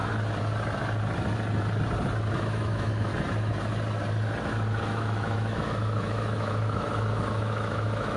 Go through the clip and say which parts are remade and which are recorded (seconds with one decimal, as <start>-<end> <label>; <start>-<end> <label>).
0.0-2.3 recorded; 2.3-3.1 remade; 3.1-4.8 recorded; 4.8-8.2 remade